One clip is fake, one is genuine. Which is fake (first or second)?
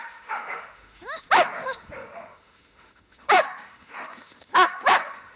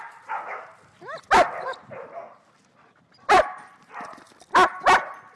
first